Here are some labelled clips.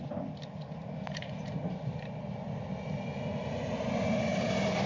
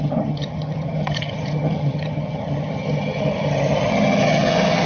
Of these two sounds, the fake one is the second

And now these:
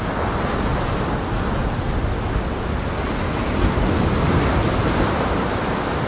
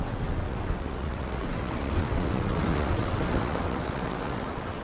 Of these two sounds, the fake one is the second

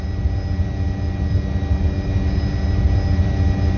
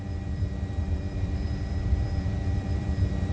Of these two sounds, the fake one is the second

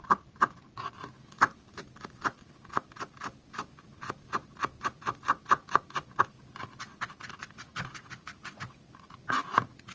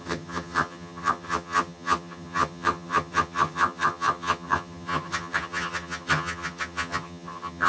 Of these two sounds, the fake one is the second